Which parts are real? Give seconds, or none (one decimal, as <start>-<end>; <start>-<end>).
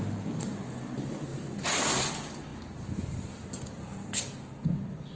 0.0-1.3; 2.1-5.2